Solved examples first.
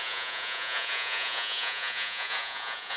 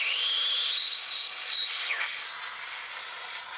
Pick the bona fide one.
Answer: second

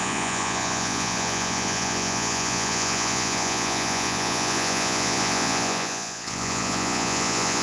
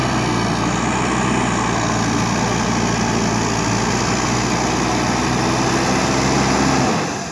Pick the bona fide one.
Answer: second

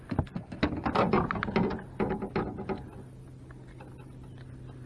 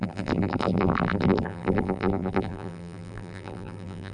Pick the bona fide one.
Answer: first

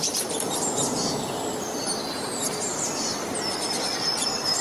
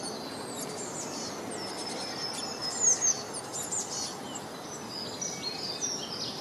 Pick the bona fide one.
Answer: second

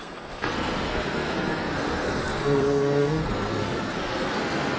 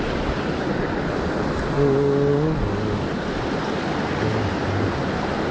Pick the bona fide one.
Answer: second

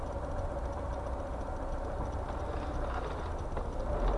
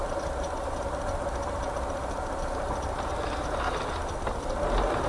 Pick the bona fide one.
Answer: first